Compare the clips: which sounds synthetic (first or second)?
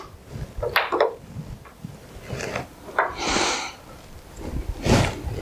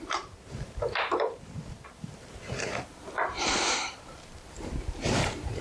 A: second